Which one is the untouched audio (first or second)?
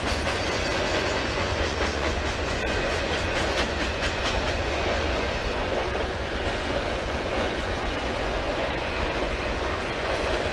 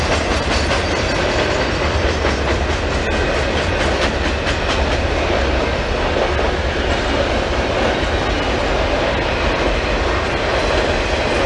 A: second